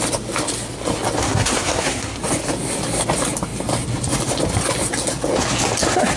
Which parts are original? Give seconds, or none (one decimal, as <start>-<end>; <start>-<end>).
0.0-1.2; 2.2-6.2